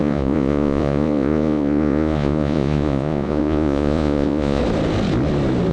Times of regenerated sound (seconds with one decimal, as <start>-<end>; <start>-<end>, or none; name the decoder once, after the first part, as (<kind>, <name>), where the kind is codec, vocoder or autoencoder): 0.0-4.6 (vocoder, Vocos)